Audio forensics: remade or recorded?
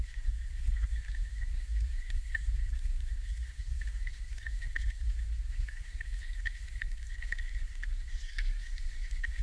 remade